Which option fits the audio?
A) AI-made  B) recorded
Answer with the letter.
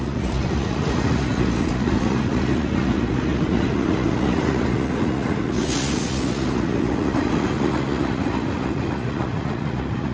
A